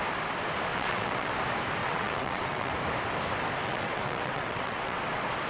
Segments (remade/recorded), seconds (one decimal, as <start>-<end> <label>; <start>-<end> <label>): 0.0-0.7 recorded; 0.7-1.3 remade; 1.3-1.8 recorded; 1.8-2.7 remade; 2.7-3.6 recorded; 3.6-5.0 remade; 5.0-5.5 recorded